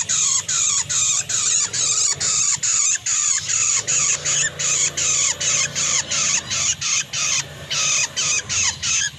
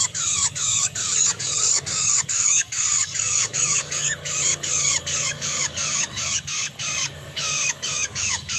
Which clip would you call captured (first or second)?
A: first